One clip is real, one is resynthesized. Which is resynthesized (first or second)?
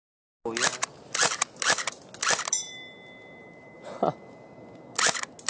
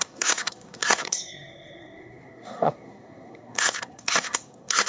second